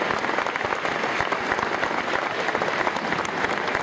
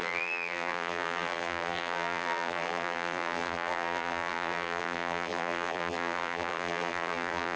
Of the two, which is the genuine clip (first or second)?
first